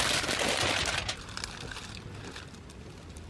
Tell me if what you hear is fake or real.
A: real